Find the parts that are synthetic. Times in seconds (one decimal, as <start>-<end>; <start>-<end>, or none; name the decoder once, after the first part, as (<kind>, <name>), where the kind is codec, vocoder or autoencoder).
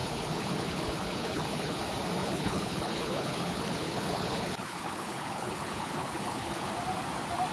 0.0-1.8 (codec, HILCodec); 2.2-6.7